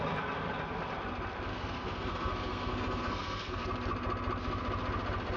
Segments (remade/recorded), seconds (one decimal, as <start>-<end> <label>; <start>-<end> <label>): 0.0-1.5 recorded; 1.5-3.6 remade; 3.6-5.4 recorded